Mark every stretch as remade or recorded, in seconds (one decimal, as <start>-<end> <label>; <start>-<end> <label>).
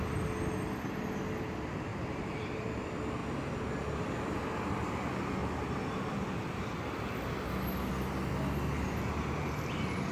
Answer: 0.0-1.9 recorded; 1.9-2.8 remade; 2.8-5.4 recorded; 5.4-6.7 remade; 6.7-10.1 recorded